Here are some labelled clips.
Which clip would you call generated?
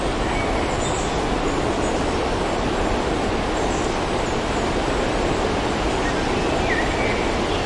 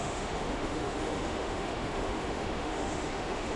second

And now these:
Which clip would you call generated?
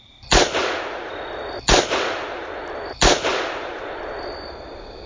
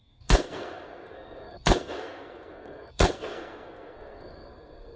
second